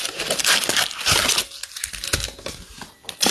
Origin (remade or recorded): recorded